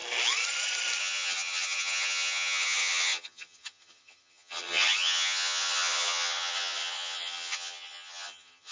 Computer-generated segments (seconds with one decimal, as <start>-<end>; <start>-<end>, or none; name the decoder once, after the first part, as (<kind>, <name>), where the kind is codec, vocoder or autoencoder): 1.0-8.7 (vocoder, HiFi-GAN)